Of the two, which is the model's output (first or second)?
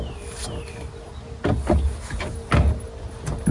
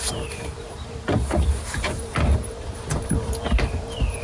second